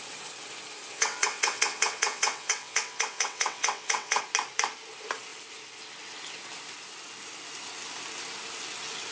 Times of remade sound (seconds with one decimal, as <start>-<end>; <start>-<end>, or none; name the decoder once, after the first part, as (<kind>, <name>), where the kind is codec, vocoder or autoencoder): 0.9-4.2 (vocoder, WaveNeXt)

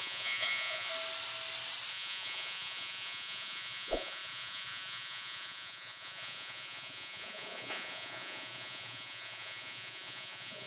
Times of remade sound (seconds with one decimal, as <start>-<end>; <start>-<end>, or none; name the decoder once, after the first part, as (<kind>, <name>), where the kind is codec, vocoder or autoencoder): 0.0-0.9 (vocoder, Vocos); 1.9-10.7

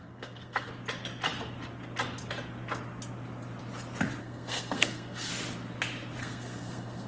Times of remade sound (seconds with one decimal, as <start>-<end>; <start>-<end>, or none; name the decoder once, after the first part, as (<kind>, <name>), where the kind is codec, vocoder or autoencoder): 0.0-0.7 (codec, SNAC); 4.2-5.3; 6.2-7.1

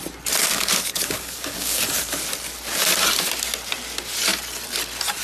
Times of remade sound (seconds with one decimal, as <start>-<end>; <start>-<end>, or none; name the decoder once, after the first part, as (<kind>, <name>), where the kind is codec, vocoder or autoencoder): 0.4-1.8 (codec, DAC)

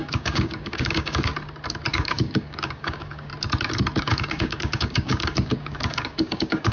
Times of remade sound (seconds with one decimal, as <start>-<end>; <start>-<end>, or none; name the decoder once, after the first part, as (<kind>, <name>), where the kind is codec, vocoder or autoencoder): 0.0-1.3 (codec, DAC); 1.9-3.3; 4.0-6.7

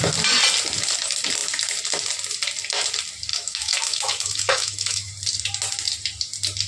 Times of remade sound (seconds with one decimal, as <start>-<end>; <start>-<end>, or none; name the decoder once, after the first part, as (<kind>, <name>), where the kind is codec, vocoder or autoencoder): 3.3-5.1 (autoencoder, DAC-VAE)